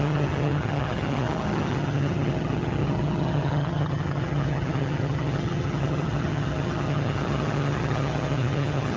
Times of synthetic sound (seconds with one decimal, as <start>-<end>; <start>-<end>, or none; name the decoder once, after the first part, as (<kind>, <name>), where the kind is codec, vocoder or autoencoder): 0.0-9.0 (vocoder, HiFi-GAN)